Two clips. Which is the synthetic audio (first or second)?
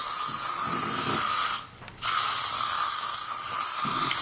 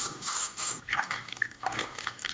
second